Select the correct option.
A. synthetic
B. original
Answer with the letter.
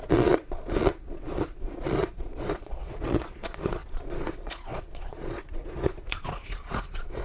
A